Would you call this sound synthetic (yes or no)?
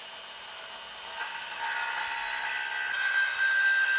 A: no